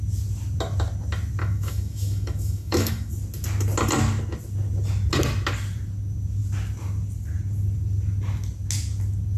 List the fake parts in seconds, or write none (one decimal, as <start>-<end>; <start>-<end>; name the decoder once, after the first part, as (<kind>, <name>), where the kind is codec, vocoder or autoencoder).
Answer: 1.4-3.1 (autoencoder, DAC-VAE)